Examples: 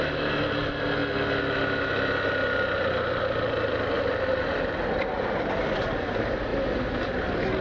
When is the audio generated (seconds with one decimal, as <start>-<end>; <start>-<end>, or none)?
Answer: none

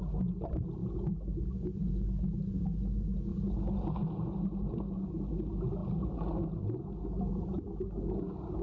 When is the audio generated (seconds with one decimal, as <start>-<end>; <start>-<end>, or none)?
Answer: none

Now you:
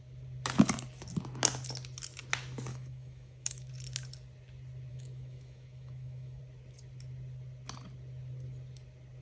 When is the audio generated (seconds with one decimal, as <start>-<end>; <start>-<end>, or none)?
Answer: 2.7-3.7; 4.9-6.4

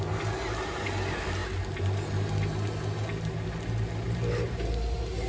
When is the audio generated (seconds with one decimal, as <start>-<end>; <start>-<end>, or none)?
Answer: none

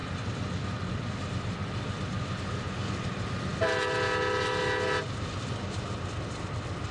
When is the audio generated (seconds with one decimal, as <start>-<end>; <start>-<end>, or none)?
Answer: none

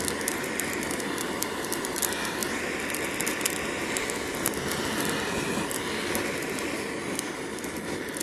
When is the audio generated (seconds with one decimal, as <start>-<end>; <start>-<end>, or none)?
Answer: none